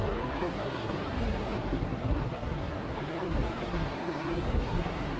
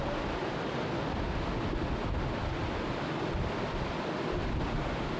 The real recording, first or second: second